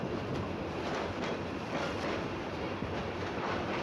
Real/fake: real